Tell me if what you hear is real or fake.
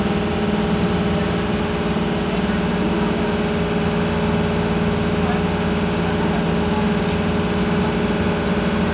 real